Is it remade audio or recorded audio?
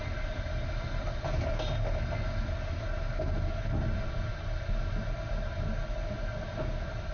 recorded